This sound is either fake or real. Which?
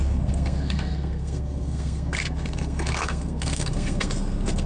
fake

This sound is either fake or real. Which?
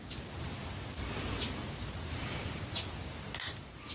real